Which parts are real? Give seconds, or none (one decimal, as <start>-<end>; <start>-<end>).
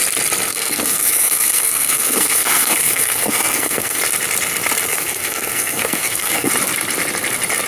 0.0-0.5; 4.0-4.9; 6.5-7.7